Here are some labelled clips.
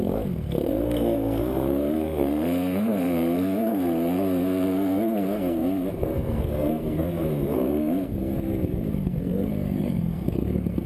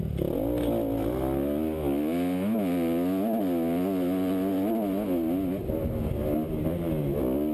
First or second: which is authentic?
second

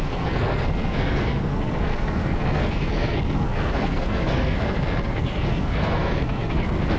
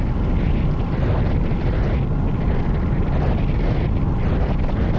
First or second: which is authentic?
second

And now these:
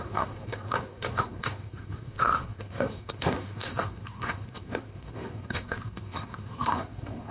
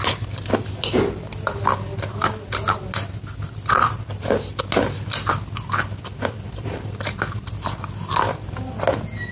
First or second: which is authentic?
second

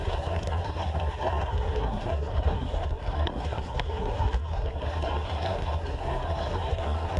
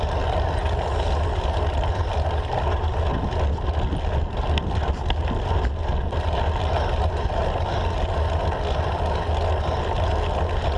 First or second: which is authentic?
second